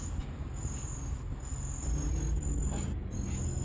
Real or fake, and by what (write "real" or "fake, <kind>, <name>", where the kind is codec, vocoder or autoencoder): real